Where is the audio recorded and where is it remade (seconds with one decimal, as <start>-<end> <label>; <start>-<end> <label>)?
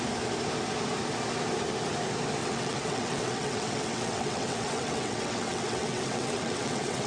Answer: 0.0-2.4 recorded; 2.4-7.1 remade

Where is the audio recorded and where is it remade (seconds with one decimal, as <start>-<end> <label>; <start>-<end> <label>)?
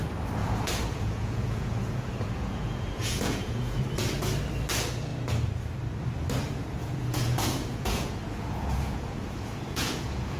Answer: 0.0-0.4 recorded; 0.4-3.8 remade; 3.8-6.8 recorded; 6.8-10.4 remade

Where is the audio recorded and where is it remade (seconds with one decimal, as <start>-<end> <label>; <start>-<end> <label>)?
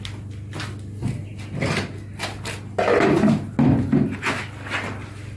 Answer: 0.0-5.4 recorded